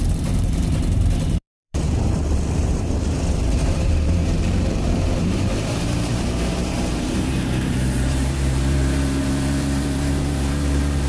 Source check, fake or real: fake